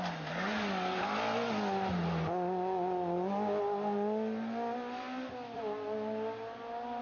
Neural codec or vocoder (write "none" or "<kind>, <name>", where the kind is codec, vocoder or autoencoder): none